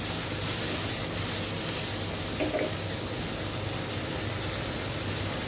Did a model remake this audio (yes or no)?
no